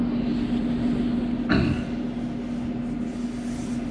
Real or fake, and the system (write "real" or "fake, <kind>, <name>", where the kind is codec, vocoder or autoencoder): real